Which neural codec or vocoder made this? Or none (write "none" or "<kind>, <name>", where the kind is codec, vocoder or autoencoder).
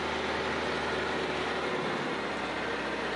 none